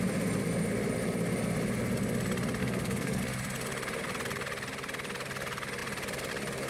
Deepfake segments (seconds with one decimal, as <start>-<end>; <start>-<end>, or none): 2.6-3.2